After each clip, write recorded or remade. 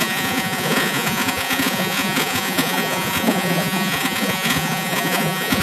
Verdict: remade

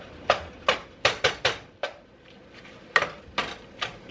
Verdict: recorded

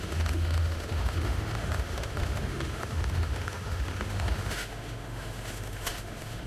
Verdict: remade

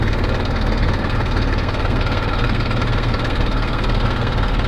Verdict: remade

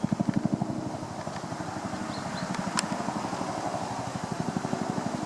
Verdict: recorded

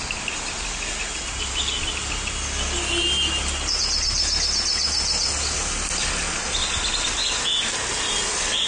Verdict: recorded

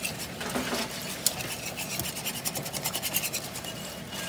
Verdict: recorded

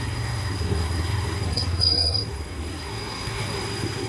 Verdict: remade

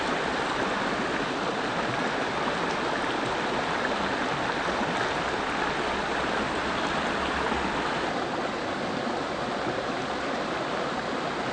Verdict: recorded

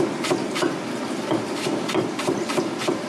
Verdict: recorded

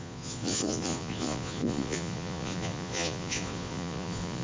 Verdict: remade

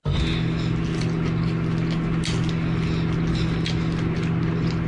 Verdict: recorded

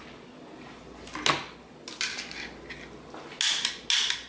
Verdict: recorded